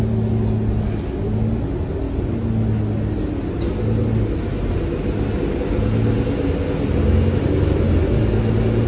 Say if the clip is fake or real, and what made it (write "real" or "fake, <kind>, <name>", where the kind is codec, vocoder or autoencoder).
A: real